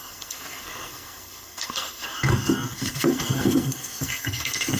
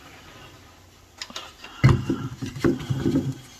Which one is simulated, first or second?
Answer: first